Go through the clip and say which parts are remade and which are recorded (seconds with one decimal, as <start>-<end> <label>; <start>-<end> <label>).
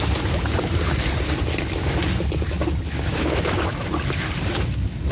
0.0-3.1 recorded; 3.1-3.9 remade; 3.9-5.1 recorded